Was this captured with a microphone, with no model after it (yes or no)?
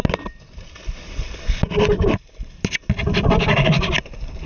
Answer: yes